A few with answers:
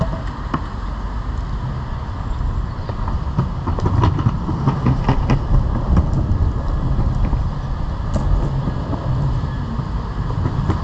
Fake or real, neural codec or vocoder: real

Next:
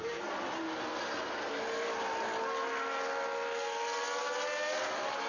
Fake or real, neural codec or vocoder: real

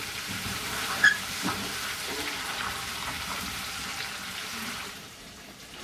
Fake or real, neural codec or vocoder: fake, vocoder, BigVGAN v2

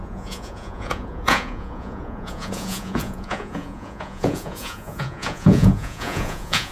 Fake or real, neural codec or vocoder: fake, vocoder, Vocos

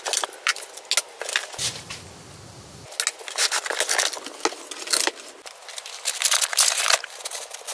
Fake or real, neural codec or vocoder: real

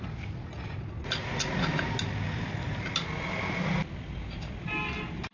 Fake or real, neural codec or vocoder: real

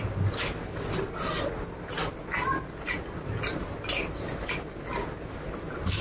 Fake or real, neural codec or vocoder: real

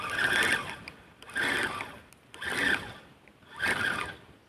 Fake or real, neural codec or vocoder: real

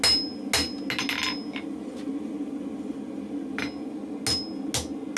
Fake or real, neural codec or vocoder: real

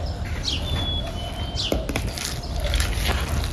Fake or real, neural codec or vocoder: real